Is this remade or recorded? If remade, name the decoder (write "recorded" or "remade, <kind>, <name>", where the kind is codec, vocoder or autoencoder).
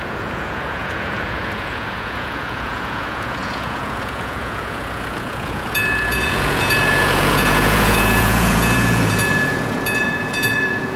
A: remade, vocoder, Vocos